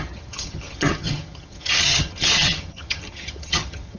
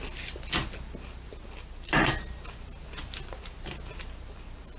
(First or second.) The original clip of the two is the second